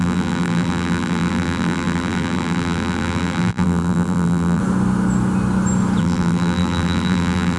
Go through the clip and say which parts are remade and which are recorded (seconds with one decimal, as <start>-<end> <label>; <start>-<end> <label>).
0.0-4.6 remade; 4.6-6.0 recorded; 6.0-7.6 remade